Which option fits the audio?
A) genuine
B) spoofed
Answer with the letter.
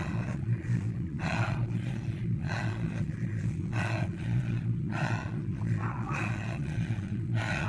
B